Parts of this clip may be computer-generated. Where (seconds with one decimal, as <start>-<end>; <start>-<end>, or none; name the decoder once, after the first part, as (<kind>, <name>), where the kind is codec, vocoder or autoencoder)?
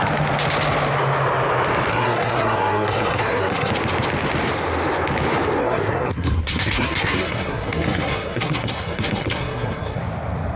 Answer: 1.9-3.7 (codec, SNAC); 5.6-10.0